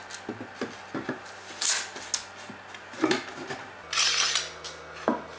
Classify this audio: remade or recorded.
recorded